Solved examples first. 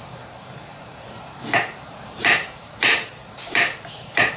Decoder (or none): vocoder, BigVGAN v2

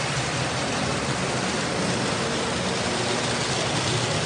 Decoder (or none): none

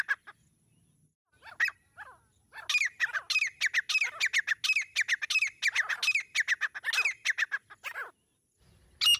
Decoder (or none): none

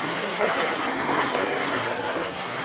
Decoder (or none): codec, SNAC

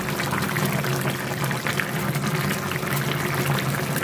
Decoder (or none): none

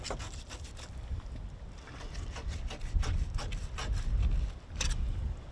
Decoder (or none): none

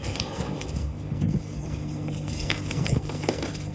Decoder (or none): codec, SNAC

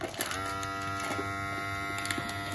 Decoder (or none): none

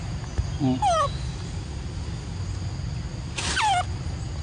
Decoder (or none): none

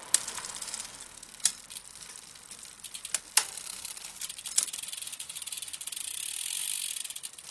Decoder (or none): none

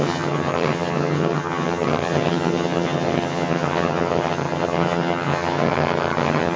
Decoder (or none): vocoder, HiFi-GAN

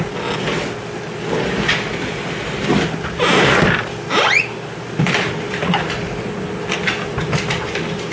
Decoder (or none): none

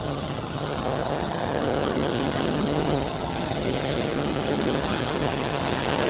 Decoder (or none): vocoder, HiFi-GAN